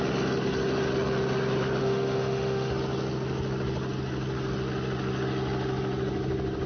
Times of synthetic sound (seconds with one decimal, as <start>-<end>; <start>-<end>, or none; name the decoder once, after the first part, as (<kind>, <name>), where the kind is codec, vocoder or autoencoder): 1.8-2.7 (autoencoder, DAC-VAE)